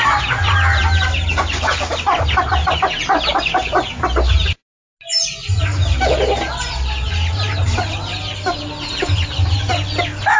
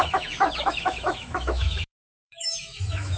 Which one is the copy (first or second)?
second